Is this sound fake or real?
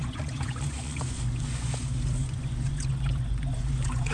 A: fake